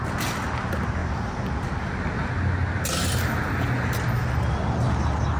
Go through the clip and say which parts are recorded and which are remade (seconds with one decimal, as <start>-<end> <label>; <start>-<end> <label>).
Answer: 0.0-5.4 recorded